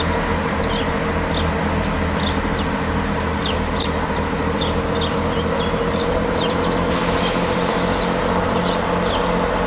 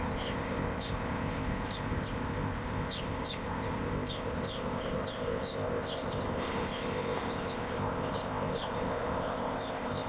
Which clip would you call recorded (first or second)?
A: first